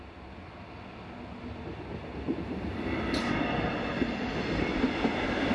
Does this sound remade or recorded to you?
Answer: recorded